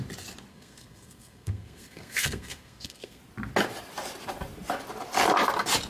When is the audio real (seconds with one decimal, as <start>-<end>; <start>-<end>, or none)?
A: 0.0-0.5; 3.2-5.9

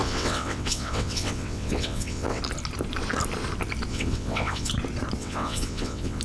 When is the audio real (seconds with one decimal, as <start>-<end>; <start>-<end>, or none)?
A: 2.4-3.9; 4.7-5.2